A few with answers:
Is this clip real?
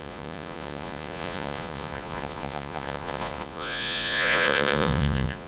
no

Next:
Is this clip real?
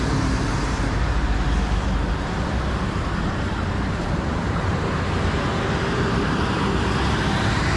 no